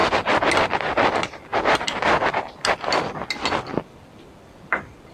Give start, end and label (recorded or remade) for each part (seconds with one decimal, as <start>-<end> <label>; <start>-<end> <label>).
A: 0.0-5.1 recorded